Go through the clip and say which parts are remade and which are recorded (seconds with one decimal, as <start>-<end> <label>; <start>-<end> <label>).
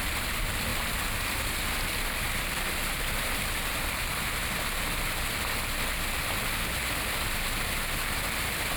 0.0-8.8 recorded